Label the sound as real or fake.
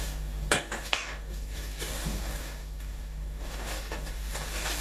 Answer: fake